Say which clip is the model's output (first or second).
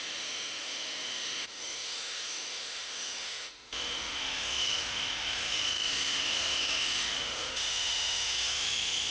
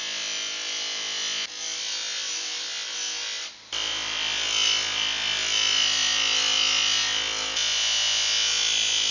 first